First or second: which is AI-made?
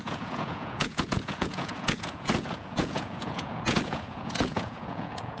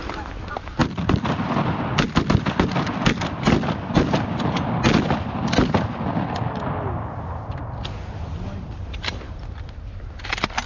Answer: first